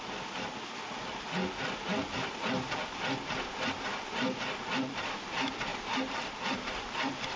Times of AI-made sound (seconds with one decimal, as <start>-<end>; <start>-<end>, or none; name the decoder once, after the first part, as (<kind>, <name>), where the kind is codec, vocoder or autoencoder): 5.7-6.6 (vocoder, BigVGAN v2)